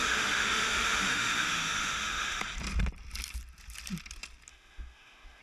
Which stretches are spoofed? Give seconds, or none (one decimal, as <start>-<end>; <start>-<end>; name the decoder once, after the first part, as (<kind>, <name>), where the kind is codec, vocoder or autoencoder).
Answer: 0.0-2.4 (autoencoder, DAC-VAE); 4.5-5.4